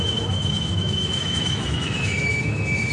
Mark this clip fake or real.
fake